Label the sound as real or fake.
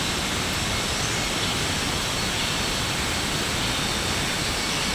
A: real